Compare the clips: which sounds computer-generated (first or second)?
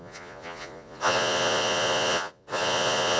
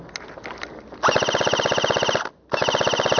first